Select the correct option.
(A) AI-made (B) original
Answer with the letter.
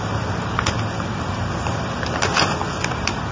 B